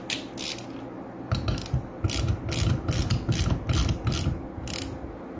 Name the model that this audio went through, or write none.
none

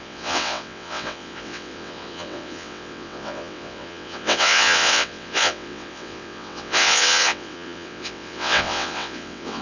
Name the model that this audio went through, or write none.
vocoder, WaveNeXt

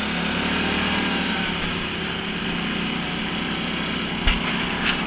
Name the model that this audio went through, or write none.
none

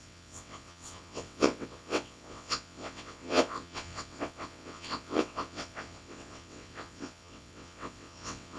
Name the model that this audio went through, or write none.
vocoder, WaveNeXt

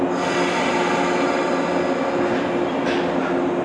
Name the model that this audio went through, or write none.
none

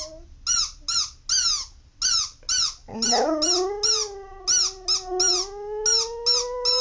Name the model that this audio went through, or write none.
none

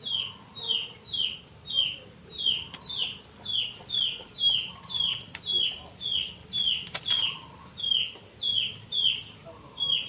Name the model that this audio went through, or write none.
none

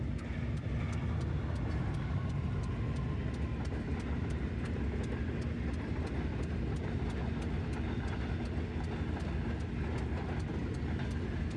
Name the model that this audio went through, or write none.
none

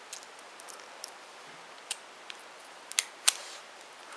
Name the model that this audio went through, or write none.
none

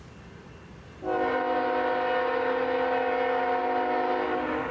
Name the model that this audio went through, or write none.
none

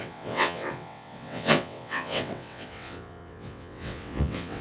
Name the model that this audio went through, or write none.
vocoder, WaveNeXt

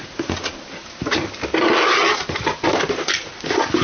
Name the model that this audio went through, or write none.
none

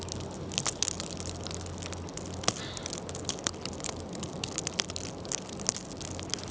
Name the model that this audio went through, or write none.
none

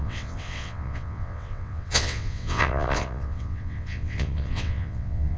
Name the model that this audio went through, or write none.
vocoder, WaveNeXt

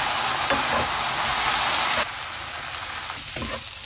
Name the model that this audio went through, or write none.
none